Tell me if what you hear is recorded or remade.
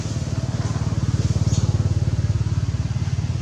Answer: recorded